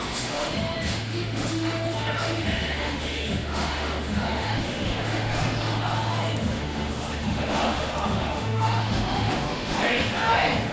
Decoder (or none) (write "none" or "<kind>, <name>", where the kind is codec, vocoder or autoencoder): autoencoder, DAC-VAE